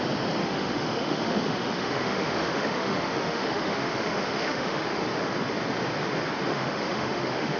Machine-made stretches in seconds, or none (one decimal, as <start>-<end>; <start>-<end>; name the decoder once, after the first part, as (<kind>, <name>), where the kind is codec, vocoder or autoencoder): 0.4-5.0 (autoencoder, DAC-VAE); 6.5-7.6